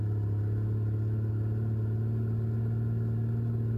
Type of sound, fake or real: real